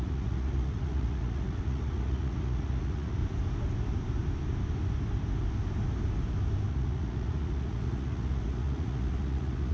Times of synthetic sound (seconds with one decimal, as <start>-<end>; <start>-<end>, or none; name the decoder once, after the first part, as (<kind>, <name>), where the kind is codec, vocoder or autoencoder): 0.0-3.2 (vocoder, Vocos); 6.7-9.7